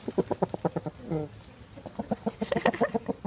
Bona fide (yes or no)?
yes